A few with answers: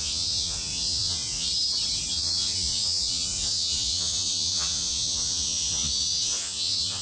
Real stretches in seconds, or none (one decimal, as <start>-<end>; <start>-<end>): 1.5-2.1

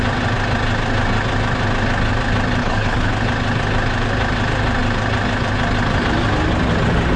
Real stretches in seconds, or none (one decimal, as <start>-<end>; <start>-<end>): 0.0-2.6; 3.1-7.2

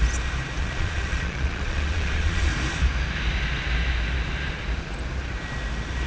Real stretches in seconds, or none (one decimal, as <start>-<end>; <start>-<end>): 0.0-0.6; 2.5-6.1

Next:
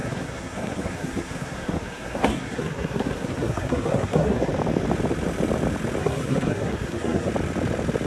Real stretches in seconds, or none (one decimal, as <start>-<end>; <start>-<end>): 4.5-6.0; 7.3-8.1